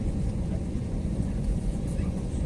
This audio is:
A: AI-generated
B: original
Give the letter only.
A